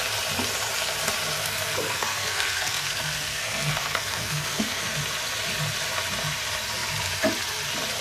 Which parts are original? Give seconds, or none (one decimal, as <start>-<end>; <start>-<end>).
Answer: 0.0-1.4; 5.0-8.0